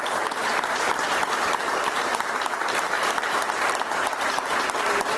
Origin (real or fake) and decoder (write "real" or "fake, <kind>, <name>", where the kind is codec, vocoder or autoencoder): fake, vocoder, BigVGAN v2